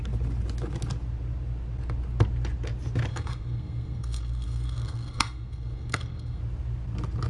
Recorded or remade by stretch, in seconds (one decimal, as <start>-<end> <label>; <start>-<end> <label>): 0.0-3.1 recorded; 3.1-6.4 remade; 6.4-7.3 recorded